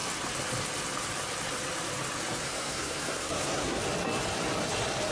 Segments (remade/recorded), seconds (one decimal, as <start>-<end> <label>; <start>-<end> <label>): 0.0-2.4 recorded; 2.4-3.8 remade; 3.8-5.1 recorded